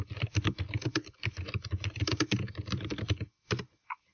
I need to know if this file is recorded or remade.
recorded